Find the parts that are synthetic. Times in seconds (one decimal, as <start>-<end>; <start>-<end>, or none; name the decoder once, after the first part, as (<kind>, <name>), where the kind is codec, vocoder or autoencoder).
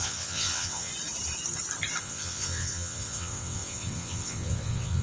0.0-0.9 (vocoder, WaveNeXt); 2.0-5.0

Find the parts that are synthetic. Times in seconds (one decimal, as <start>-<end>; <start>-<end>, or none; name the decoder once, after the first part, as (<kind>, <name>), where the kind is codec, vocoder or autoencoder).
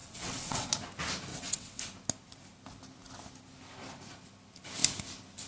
0.0-0.7 (vocoder, WaveNeXt); 1.3-1.8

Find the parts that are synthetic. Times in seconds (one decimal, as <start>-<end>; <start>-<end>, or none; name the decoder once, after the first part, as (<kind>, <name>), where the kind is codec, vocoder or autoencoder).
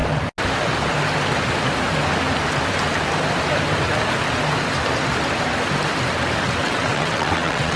6.6-7.8 (vocoder, WaveNeXt)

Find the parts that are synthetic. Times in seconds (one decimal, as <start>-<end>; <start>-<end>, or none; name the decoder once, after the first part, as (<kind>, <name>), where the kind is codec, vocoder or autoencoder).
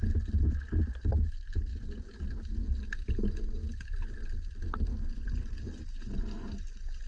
none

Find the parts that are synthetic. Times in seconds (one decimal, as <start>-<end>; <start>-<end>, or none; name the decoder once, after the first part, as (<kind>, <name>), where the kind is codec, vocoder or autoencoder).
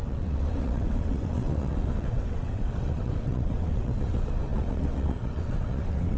0.0-6.2 (vocoder, WaveNeXt)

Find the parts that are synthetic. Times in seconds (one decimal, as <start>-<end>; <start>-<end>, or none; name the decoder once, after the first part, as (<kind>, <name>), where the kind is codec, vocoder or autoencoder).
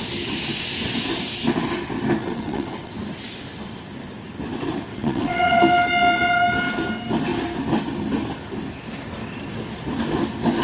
2.2-2.9 (vocoder, WaveNeXt); 4.9-5.6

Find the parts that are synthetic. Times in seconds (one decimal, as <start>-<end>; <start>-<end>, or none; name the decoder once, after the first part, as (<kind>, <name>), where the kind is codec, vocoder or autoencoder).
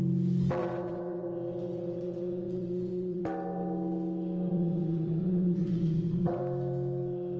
0.6-3.2 (vocoder, WaveNeXt); 4.5-6.4